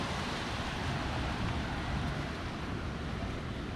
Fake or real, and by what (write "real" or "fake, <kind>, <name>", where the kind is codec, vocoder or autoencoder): fake, vocoder, BigVGAN v2